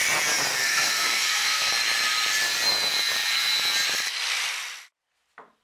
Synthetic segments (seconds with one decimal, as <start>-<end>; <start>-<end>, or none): 0.5-1.7